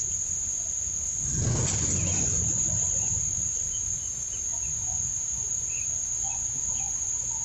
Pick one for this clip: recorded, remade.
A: remade